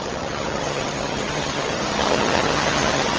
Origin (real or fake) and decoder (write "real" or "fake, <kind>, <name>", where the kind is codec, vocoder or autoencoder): fake, vocoder, HiFi-GAN